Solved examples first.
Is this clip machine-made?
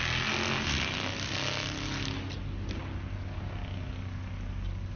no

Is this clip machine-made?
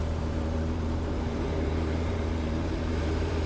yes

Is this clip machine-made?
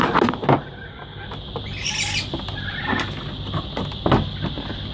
no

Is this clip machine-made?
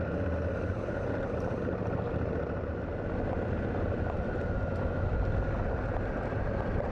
no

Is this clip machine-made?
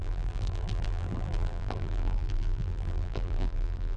yes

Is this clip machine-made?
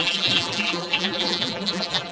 yes